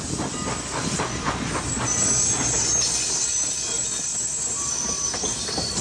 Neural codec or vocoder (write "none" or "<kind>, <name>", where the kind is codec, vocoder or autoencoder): none